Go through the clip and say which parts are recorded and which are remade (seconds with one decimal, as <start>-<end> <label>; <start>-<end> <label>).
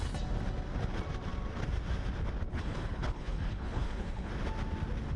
0.0-2.5 recorded; 2.5-4.3 remade; 4.3-5.2 recorded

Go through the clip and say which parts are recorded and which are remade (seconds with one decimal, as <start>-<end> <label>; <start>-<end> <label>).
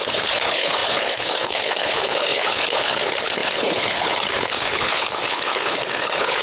0.0-6.4 remade